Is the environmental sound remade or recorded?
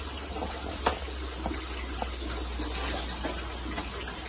recorded